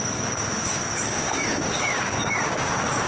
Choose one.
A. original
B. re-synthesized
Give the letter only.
B